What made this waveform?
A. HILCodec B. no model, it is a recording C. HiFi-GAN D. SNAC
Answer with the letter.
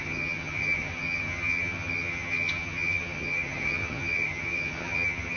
C